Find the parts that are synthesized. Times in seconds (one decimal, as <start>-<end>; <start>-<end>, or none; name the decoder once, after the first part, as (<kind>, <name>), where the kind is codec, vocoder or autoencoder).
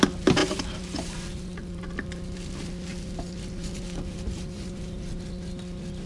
0.4-1.8 (vocoder, BigVGAN v2); 2.9-5.1